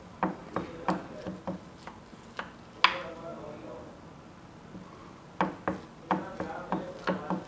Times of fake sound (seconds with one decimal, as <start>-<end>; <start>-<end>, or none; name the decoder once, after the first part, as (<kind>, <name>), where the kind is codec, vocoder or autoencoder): none